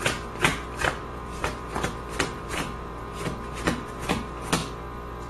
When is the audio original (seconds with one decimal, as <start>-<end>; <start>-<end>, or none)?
4.6-5.3